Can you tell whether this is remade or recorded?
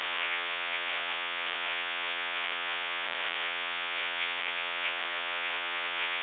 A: remade